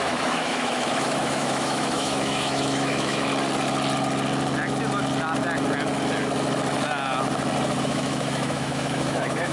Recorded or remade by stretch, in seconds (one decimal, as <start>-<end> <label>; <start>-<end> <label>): 0.0-3.3 remade; 3.3-7.8 recorded; 7.8-9.5 remade